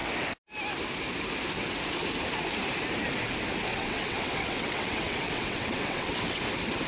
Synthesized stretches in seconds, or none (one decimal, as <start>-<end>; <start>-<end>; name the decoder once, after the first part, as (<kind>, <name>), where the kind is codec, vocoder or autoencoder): 3.7-6.4 (vocoder, WaveNeXt)